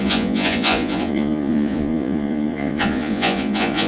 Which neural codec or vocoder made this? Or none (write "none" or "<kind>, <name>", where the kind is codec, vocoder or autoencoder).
vocoder, Vocos